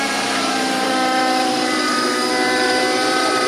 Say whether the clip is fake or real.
fake